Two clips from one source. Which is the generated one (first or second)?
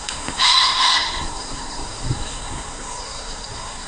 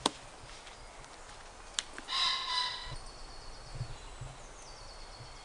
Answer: first